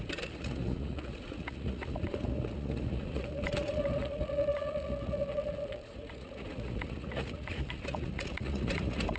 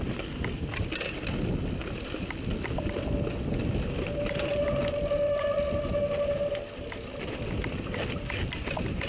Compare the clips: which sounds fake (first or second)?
first